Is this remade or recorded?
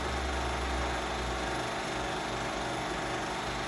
recorded